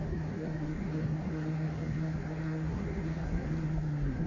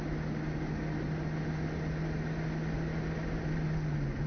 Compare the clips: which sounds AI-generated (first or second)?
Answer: first